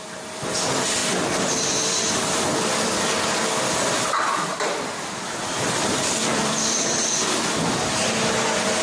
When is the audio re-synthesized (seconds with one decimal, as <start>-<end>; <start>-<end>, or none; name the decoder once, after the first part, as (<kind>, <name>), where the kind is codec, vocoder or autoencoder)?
1.0-2.1 (vocoder, BigVGAN v2); 6.3-7.0